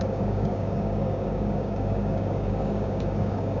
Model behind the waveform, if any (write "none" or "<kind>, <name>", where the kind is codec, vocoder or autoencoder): codec, DAC